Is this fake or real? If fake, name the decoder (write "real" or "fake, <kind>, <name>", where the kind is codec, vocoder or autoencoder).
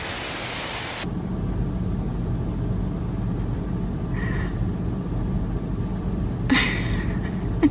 real